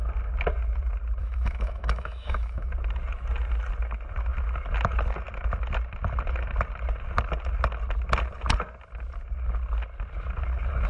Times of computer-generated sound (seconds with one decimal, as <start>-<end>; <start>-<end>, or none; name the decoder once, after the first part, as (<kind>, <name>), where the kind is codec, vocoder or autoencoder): 1.2-2.7 (autoencoder, DAC-VAE)